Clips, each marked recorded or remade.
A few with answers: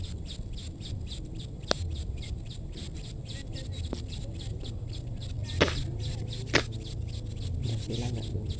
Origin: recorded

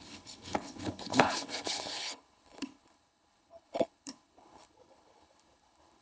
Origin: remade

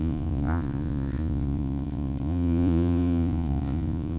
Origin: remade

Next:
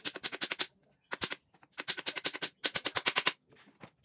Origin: recorded